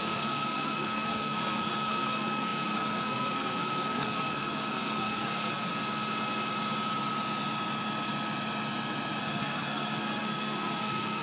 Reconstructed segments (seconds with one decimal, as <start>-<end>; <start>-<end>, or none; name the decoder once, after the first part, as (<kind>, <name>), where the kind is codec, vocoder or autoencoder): 0.0-5.7 (codec, SNAC); 9.2-11.2